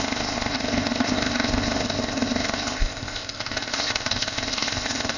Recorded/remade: remade